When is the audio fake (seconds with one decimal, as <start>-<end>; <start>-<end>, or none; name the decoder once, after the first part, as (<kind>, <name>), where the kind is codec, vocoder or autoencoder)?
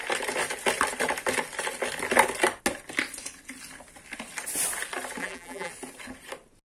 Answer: 5.2-5.7 (vocoder, BigVGAN v2)